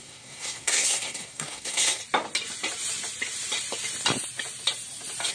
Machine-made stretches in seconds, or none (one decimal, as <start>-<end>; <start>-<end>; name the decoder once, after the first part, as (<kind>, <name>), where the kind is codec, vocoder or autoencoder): 0.0-2.0 (codec, SNAC)